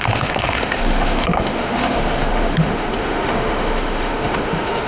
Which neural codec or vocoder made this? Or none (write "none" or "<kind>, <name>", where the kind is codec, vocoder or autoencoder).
autoencoder, DAC-VAE